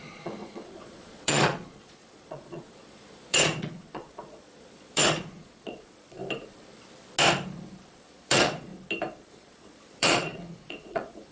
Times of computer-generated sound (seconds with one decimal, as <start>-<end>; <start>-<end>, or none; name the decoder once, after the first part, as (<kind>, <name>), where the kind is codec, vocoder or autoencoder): 0.0-6.2 (vocoder, Vocos); 8.0-8.7; 9.3-11.3